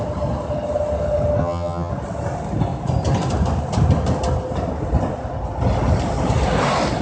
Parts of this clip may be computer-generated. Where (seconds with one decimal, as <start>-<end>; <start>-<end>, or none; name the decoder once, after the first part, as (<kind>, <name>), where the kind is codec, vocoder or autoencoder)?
1.4-1.9 (vocoder, HiFi-GAN)